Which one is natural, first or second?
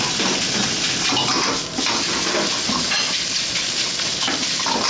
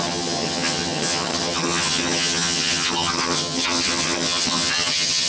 first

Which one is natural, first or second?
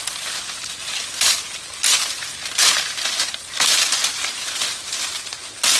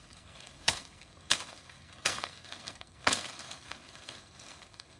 first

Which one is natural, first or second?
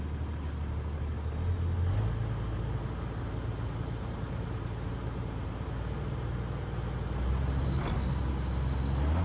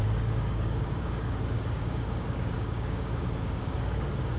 first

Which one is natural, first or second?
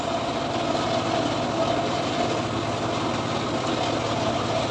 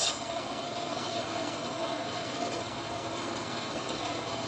first